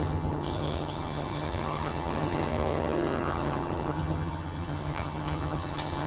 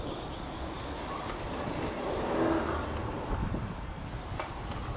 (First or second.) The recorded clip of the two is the second